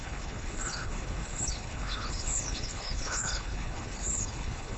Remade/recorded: remade